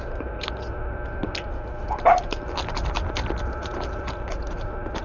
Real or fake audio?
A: real